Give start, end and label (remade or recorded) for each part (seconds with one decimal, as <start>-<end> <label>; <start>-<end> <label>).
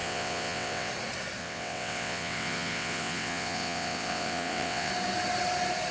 0.0-0.9 remade; 0.9-1.4 recorded; 1.4-4.9 remade; 4.9-5.9 recorded